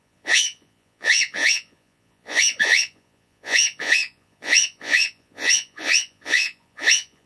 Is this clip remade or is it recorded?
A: remade